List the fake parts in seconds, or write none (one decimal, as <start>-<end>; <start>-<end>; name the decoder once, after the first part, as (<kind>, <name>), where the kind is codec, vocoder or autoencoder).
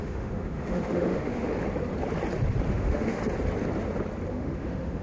0.0-1.5 (autoencoder, DAC-VAE); 2.7-3.2; 4.3-5.0